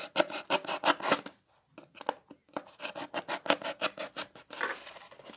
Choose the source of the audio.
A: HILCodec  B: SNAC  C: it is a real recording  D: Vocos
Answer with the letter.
C